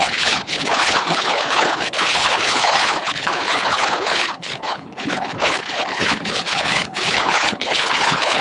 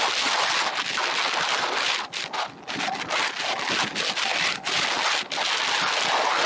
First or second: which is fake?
first